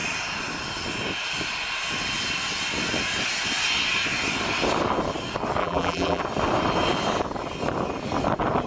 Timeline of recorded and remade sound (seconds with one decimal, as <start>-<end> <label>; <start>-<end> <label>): 0.0-5.6 recorded; 5.6-6.2 remade; 6.2-8.7 recorded